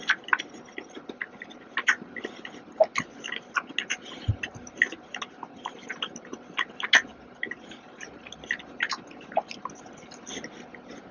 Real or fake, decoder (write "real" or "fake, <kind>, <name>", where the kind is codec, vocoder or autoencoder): real